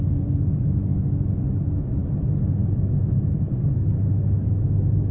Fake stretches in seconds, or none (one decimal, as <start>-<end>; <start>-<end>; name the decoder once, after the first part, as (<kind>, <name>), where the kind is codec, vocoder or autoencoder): none